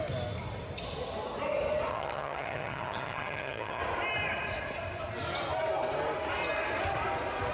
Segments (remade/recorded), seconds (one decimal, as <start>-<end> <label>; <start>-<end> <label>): 0.0-1.9 recorded; 1.9-3.8 remade; 3.8-7.5 recorded